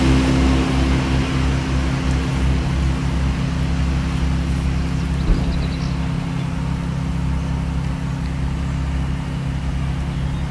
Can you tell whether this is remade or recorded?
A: recorded